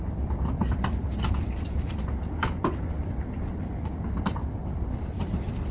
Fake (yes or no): no